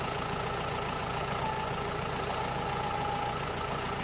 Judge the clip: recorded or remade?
remade